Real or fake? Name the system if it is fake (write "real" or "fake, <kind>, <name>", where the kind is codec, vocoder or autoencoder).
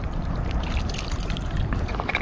fake, vocoder, BigVGAN v2